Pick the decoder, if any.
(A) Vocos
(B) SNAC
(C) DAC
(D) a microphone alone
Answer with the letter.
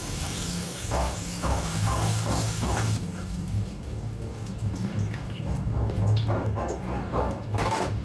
C